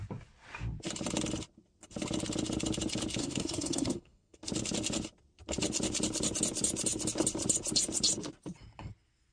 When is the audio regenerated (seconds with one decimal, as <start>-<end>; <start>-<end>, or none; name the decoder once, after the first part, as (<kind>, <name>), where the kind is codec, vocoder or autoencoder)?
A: 3.2-4.4 (codec, SNAC)